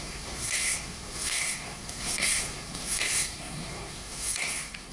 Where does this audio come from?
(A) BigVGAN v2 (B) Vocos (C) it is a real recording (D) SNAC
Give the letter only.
D